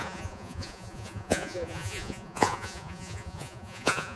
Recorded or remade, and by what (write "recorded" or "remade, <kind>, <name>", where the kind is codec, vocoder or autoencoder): remade, vocoder, Vocos